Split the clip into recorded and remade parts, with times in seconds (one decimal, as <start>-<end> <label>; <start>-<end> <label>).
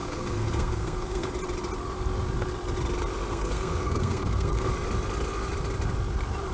0.0-1.3 remade; 1.3-3.3 recorded; 3.3-4.7 remade; 4.7-6.5 recorded